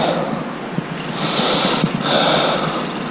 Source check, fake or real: real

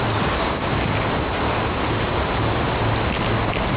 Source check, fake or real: real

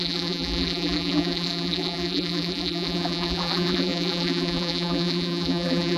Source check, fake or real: fake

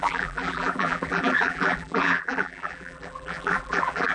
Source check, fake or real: fake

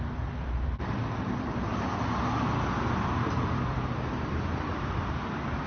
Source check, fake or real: fake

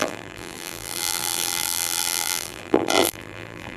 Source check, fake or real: fake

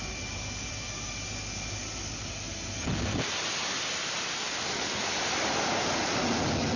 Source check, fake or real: real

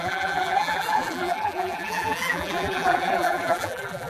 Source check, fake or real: fake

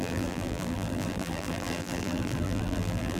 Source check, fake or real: fake